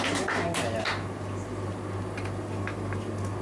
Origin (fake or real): real